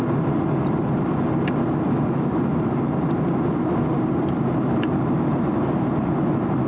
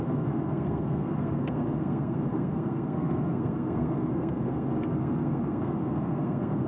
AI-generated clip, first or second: second